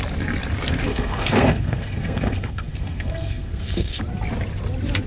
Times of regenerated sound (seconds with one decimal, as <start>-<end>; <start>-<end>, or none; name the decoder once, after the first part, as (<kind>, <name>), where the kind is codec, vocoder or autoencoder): 0.9-4.0 (codec, SNAC)